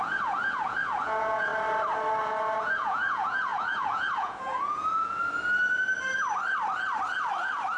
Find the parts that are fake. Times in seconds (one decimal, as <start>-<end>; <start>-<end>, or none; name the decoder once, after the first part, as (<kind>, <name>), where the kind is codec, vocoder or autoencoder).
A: 0.0-1.5 (vocoder, Vocos); 2.2-5.2